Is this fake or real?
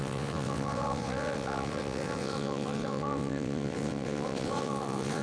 fake